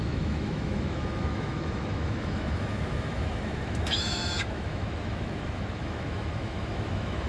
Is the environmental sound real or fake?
fake